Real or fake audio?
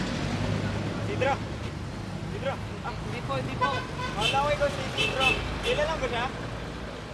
real